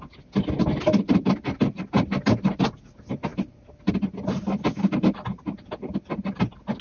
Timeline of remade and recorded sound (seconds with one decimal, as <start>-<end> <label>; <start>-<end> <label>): 0.0-6.8 recorded